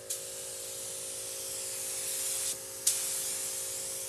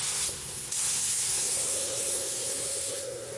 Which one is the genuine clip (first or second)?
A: first